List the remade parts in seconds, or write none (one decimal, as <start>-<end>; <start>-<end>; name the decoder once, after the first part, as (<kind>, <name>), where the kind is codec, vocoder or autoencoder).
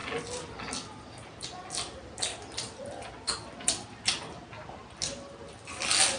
none